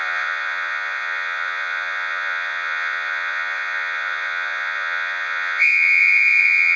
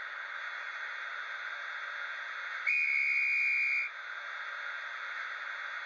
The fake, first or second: first